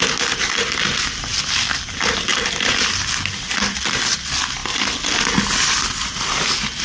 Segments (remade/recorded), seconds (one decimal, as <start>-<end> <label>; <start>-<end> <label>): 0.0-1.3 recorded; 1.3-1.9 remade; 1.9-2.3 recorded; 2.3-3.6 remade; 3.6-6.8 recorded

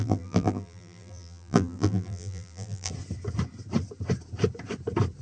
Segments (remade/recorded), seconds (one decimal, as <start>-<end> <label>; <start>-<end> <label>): 0.0-2.9 remade; 2.9-5.2 recorded

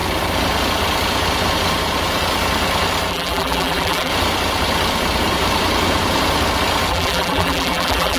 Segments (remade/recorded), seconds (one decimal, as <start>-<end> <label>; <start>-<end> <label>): 0.0-3.1 recorded; 3.1-4.1 remade; 4.1-6.9 recorded; 6.9-8.2 remade